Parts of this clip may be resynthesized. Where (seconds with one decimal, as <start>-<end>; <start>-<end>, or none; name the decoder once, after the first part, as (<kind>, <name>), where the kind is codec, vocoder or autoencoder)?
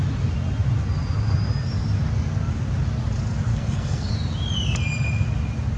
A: 3.5-4.1 (codec, SNAC)